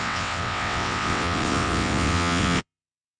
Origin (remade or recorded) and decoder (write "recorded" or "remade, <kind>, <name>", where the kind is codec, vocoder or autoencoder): remade, vocoder, WaveNeXt